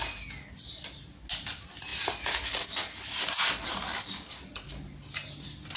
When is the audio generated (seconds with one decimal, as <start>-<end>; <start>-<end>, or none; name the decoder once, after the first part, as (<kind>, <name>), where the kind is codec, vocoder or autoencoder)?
none